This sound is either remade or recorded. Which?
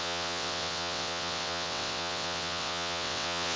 remade